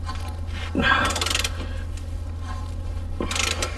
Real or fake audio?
real